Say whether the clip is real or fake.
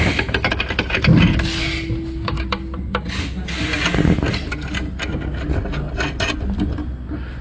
real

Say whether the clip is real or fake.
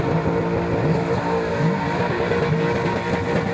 real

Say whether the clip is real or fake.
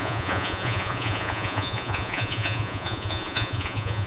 fake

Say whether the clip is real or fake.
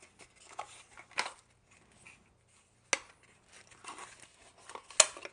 real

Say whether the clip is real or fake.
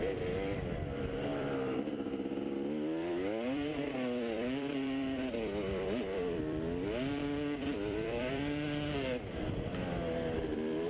fake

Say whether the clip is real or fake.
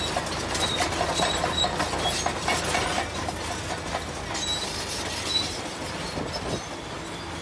real